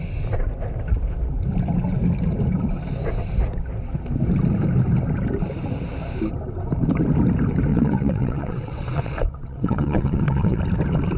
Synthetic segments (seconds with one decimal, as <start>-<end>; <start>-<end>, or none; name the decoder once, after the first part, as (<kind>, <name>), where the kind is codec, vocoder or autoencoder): 7.7-10.6 (vocoder, WaveNeXt)